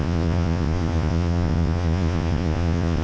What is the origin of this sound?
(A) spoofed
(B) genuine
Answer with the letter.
A